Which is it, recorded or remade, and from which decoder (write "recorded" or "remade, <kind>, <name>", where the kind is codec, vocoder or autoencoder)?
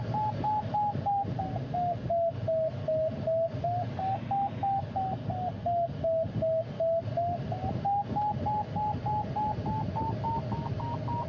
recorded